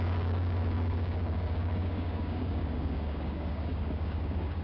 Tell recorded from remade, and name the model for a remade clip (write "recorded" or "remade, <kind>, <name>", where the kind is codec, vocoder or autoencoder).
remade, codec, DAC